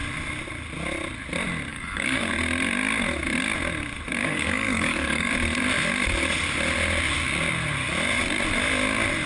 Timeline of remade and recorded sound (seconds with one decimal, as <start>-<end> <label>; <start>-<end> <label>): 0.0-1.7 recorded; 1.7-2.3 remade; 2.3-4.2 recorded; 4.2-5.3 remade; 5.3-9.3 recorded